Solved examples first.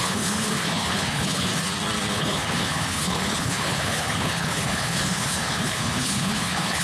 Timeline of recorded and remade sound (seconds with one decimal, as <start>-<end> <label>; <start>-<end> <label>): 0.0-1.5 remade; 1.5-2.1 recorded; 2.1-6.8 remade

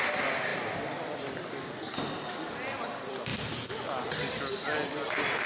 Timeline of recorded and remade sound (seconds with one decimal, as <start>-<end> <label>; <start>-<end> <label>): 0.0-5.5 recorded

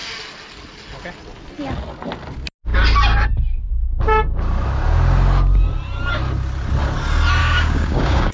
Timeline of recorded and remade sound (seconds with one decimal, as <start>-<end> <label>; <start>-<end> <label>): 0.0-7.4 recorded; 7.4-8.3 remade

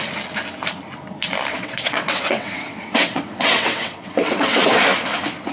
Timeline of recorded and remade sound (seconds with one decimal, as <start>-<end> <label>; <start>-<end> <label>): 0.0-1.5 recorded; 1.5-4.8 remade; 4.8-5.5 recorded